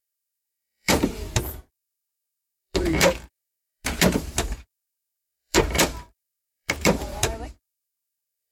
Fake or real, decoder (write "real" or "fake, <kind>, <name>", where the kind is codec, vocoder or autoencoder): fake, vocoder, BigVGAN v2